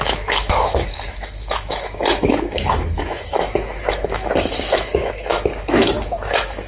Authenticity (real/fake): fake